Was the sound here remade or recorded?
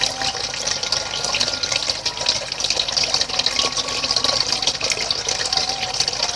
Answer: recorded